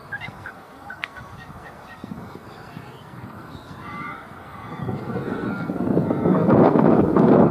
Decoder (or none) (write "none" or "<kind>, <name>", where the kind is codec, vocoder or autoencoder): codec, SNAC